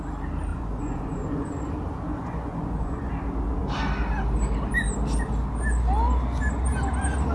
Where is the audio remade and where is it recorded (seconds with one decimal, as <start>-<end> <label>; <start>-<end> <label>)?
0.0-0.5 recorded; 0.5-1.7 remade; 1.7-2.1 recorded; 2.1-3.1 remade; 3.1-7.3 recorded

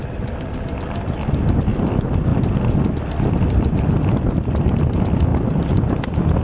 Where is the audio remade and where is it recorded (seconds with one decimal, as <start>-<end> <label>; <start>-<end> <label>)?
0.0-6.4 recorded

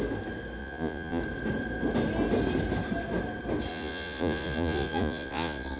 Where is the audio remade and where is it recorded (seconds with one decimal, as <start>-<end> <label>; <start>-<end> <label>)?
0.0-0.6 recorded; 0.6-1.2 remade; 1.2-3.7 recorded; 3.7-5.8 remade

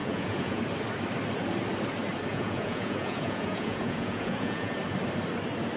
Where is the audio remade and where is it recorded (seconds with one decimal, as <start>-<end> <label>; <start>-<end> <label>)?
0.0-0.6 remade; 0.6-2.3 recorded; 2.3-4.8 remade; 4.8-5.8 recorded